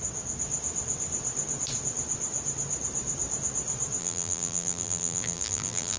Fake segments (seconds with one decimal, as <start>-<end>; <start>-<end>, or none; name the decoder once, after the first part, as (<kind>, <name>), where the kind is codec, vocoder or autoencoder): 4.0-6.0 (vocoder, BigVGAN v2)